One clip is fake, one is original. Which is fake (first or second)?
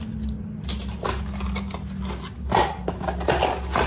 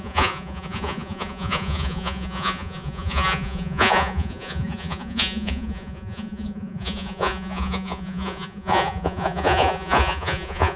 second